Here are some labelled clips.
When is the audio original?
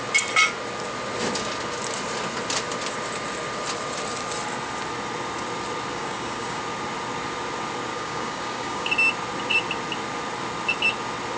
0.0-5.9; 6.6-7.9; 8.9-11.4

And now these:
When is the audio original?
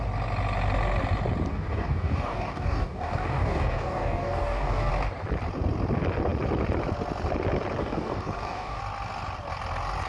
0.0-1.5; 4.9-7.8; 8.8-10.1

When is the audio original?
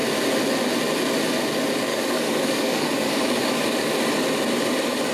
0.0-1.9; 3.9-5.1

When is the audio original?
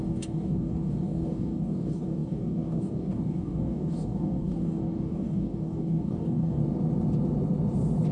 6.6-8.1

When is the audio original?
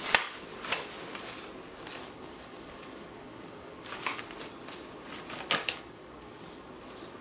0.0-1.9; 4.2-5.6; 6.7-7.2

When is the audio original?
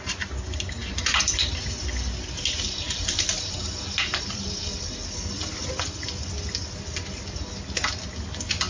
0.0-8.7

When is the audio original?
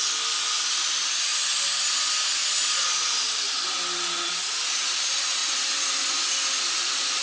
0.0-7.2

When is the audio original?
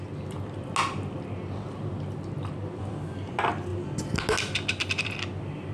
0.0-5.7